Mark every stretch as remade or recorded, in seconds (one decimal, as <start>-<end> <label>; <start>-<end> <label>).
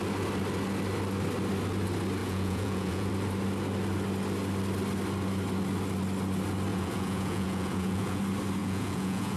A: 0.0-2.2 recorded; 2.2-3.1 remade; 3.1-6.7 recorded; 6.7-8.2 remade; 8.2-8.6 recorded; 8.6-9.4 remade